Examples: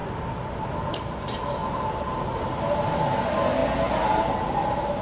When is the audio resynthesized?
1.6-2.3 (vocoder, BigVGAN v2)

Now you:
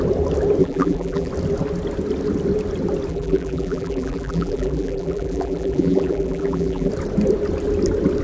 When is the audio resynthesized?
0.6-1.3 (vocoder, BigVGAN v2); 3.1-6.9

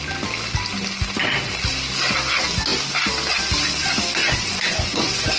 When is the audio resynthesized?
4.2-5.4 (vocoder, Vocos)